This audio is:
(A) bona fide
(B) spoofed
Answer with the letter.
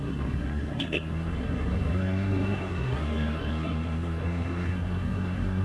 B